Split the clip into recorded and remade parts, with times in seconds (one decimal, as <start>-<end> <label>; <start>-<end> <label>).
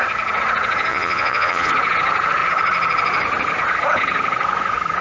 0.0-0.9 recorded; 0.9-1.7 remade; 1.7-5.0 recorded